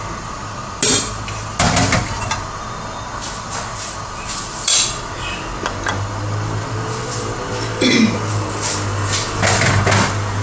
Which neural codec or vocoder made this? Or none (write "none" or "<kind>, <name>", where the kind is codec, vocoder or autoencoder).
none